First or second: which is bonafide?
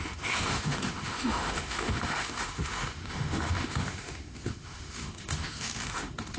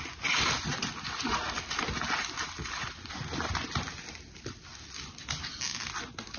second